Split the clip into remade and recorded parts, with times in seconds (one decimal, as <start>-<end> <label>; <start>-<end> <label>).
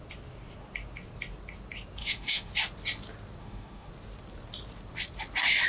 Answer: 0.0-2.0 recorded; 2.0-2.5 remade; 2.5-3.4 recorded; 3.4-3.9 remade; 3.9-5.7 recorded